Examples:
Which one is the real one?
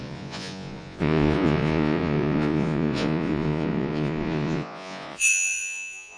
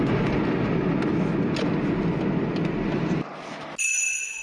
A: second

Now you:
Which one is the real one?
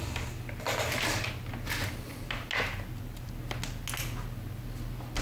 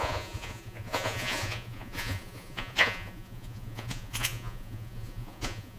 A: first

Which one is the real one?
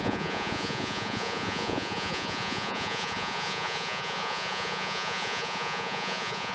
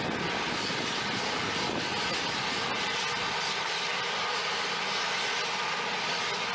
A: second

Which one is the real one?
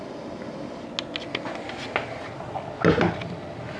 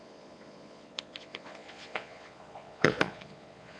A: first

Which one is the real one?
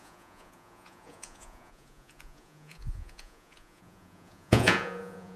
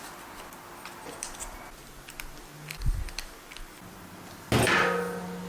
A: second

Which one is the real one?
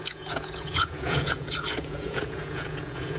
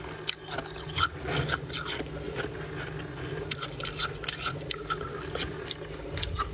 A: second